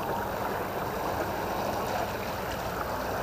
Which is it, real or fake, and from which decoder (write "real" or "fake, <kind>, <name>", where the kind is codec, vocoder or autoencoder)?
real